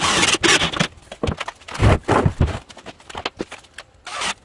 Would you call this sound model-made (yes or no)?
no